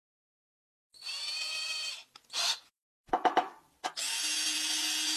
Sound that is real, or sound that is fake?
real